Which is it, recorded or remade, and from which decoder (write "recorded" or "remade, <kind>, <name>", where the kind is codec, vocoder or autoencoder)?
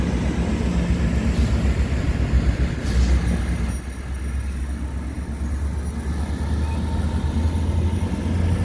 recorded